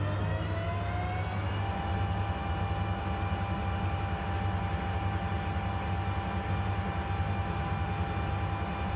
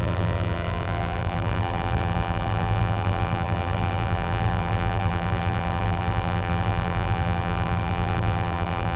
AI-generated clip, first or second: second